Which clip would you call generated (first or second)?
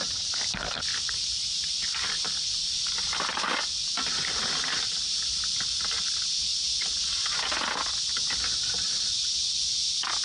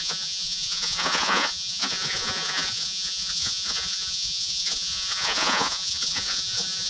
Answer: second